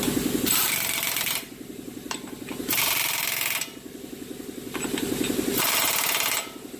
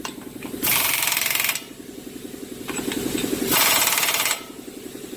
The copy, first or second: second